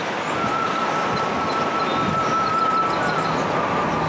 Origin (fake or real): real